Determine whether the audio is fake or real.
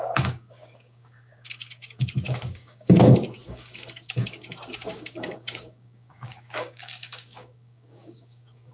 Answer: fake